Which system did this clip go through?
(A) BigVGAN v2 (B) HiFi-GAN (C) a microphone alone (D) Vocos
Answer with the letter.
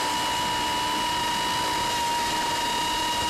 C